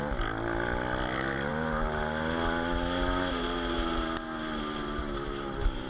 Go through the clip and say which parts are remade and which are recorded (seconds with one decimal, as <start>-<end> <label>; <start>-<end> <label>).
0.0-5.9 recorded